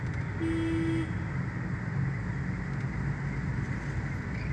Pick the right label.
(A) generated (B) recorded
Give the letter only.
B